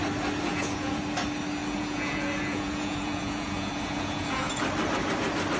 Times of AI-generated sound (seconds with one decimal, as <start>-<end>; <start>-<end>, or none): 0.5-1.0; 1.6-4.6